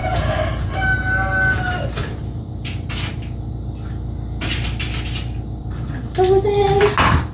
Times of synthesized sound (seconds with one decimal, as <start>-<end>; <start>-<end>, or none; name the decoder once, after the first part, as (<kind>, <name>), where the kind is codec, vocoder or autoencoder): none